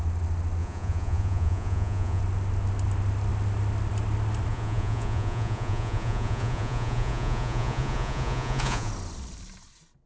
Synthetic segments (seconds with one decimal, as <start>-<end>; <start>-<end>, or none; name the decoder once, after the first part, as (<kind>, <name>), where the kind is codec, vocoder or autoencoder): 0.6-2.2 (vocoder, Vocos); 4.5-8.9